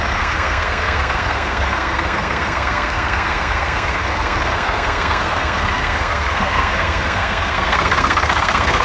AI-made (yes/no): yes